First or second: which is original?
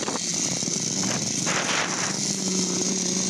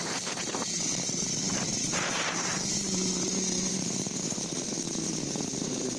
first